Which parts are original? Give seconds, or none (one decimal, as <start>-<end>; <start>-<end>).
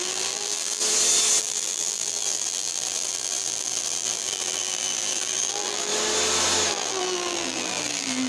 0.8-1.4; 5.9-6.7